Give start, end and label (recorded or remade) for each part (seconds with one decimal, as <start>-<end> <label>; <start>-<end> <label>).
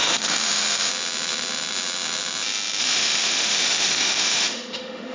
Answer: 0.0-0.9 remade; 0.9-2.8 recorded; 2.8-5.1 remade